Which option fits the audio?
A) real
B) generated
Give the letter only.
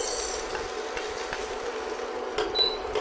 A